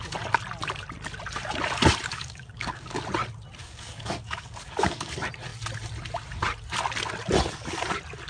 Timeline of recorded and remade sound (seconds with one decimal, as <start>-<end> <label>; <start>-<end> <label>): 0.0-2.1 recorded; 2.1-3.0 remade; 3.0-3.6 recorded; 3.6-5.1 remade; 5.1-8.3 recorded